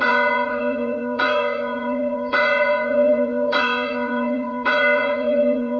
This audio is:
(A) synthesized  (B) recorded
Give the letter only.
A